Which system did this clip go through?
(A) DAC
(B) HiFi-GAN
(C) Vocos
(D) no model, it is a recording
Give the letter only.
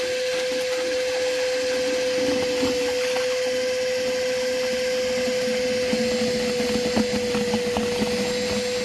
D